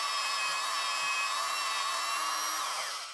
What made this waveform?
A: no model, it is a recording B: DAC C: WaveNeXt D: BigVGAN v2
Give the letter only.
A